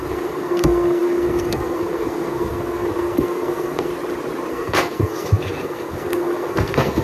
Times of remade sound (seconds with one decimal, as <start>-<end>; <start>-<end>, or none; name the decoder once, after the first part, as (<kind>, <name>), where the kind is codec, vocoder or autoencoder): 0.0-3.9 (codec, SNAC); 4.5-7.0